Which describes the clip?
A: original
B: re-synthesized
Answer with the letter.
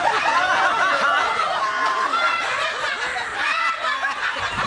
A